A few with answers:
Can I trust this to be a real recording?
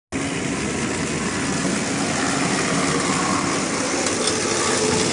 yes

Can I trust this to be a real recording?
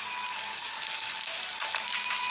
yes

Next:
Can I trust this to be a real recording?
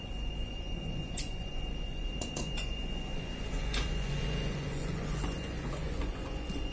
no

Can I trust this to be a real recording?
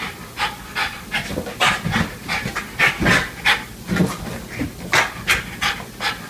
yes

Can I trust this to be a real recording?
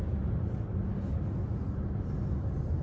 yes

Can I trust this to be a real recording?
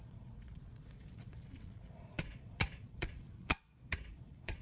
no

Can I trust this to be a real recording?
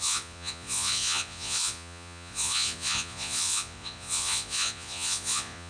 no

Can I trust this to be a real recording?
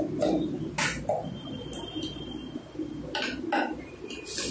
yes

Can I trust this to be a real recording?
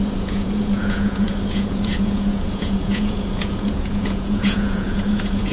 no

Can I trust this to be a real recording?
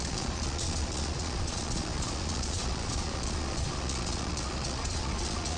no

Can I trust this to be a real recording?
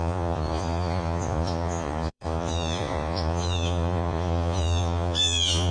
no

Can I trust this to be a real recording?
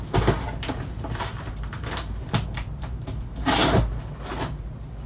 yes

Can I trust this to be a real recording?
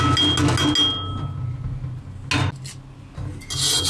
yes